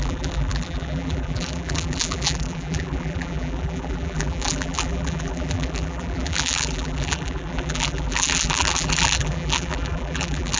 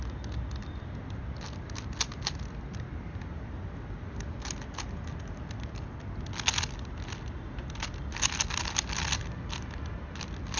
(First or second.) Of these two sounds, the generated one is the first